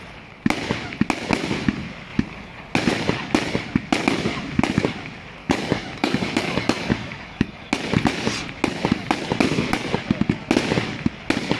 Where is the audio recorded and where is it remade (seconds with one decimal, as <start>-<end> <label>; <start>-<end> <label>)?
0.0-5.4 recorded; 5.4-7.7 remade; 7.7-11.6 recorded